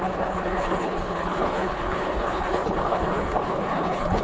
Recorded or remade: remade